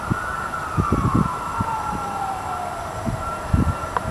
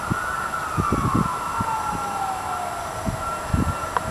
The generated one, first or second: first